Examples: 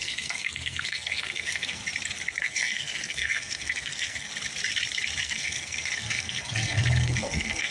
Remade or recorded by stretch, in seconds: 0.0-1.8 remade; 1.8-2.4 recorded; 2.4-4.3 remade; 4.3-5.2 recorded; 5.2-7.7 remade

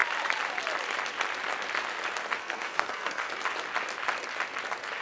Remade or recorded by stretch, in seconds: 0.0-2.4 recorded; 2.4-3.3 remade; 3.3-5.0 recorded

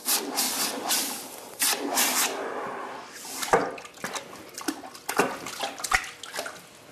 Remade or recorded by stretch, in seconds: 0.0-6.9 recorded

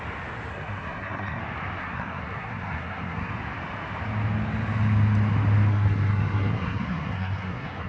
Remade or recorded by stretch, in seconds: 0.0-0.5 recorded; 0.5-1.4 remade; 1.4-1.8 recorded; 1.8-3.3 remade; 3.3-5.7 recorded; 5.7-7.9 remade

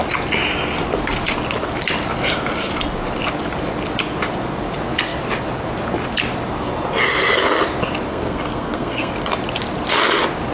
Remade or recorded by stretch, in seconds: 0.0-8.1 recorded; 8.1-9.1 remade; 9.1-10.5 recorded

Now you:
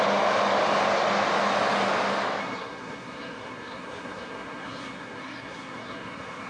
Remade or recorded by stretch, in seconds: 0.0-2.4 recorded; 2.4-6.5 remade

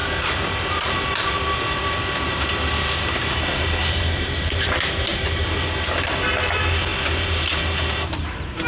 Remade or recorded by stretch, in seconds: 0.0-8.7 recorded

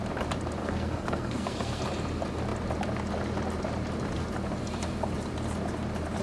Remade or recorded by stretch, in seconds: 0.0-0.6 recorded; 0.6-1.8 remade; 1.8-6.2 recorded